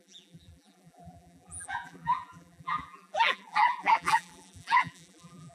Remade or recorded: remade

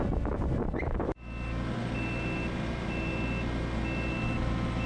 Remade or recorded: recorded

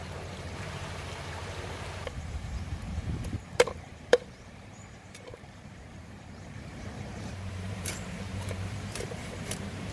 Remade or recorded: remade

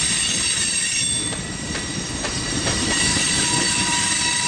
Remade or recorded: remade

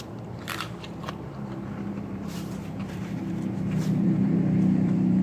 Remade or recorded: remade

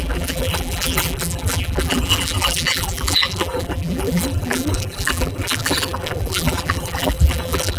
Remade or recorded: remade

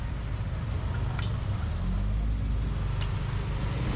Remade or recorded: recorded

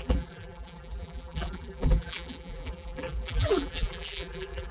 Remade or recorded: remade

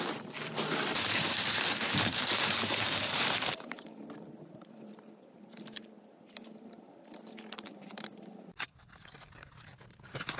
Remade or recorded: remade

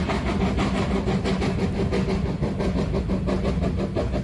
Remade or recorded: recorded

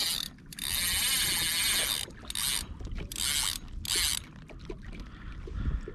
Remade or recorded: recorded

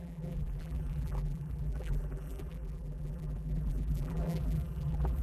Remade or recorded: remade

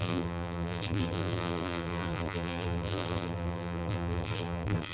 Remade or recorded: remade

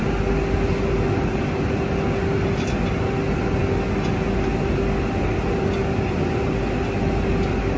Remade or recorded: recorded